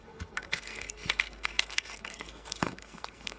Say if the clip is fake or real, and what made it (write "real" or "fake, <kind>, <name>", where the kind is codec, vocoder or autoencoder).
fake, codec, SNAC